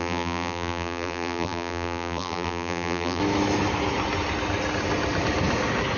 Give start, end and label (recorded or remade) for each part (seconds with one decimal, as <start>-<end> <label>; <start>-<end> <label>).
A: 0.0-3.2 remade; 3.2-6.0 recorded